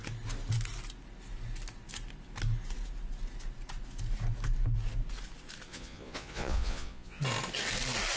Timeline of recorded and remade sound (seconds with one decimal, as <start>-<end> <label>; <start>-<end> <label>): 0.0-5.7 recorded; 5.7-7.2 remade; 7.2-8.2 recorded